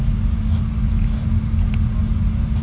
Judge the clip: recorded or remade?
recorded